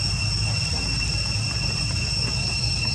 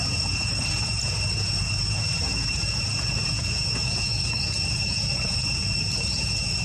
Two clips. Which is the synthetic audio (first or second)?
second